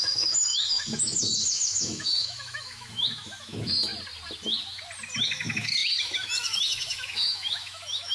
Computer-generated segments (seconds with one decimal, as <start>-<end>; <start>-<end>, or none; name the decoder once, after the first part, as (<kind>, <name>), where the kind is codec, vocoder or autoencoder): 0.0-3.9 (autoencoder, DAC-VAE); 5.2-8.1